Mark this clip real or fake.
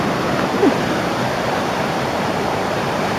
fake